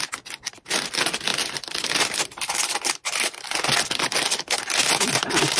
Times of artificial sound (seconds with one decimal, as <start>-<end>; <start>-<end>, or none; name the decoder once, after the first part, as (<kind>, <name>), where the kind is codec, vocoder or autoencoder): none